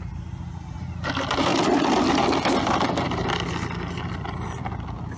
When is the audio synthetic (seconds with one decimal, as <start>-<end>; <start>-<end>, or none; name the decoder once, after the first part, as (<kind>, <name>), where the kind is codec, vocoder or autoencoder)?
none